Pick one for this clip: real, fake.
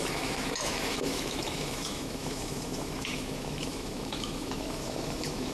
fake